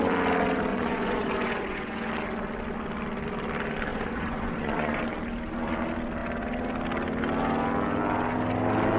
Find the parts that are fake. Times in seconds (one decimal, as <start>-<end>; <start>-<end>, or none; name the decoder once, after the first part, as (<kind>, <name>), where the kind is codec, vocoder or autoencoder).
0.7-2.1 (vocoder, Vocos); 3.9-5.0